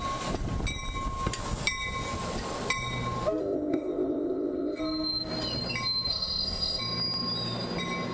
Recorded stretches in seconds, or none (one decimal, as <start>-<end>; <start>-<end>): 0.0-3.4; 4.8-6.1; 6.8-8.1